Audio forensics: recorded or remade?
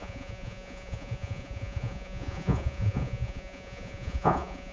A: remade